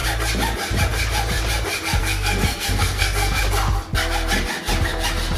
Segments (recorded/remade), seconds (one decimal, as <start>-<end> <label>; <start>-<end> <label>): 0.0-2.0 recorded; 2.0-3.4 remade; 3.4-5.4 recorded